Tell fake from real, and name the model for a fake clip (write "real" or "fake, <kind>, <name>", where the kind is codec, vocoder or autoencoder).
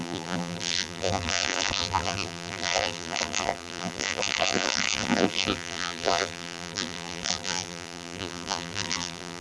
fake, vocoder, BigVGAN v2